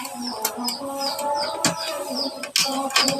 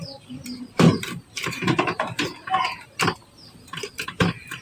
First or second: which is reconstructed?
second